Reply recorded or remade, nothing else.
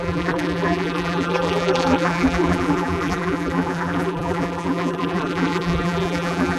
remade